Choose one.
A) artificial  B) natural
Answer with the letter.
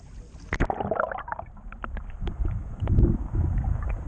B